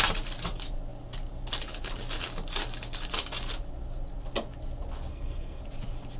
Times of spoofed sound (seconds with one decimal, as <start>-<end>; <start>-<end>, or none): 5.1-5.6